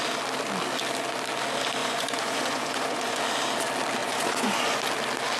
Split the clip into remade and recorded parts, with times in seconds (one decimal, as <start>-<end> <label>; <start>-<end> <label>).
0.0-1.8 recorded; 1.8-3.2 remade; 3.2-4.0 recorded; 4.0-4.8 remade; 4.8-5.4 recorded

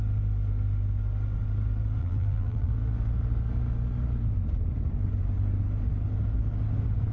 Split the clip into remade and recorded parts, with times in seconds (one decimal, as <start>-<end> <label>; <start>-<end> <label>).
0.0-2.0 recorded; 2.0-2.7 remade; 2.7-7.1 recorded